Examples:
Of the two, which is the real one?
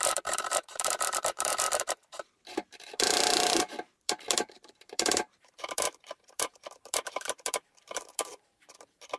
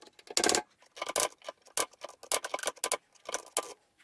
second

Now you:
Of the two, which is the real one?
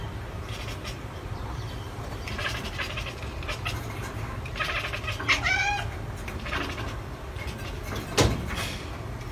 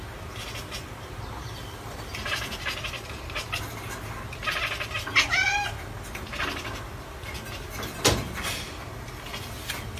second